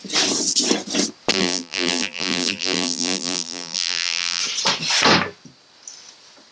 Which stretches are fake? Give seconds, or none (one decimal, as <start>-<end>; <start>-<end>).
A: 1.3-4.4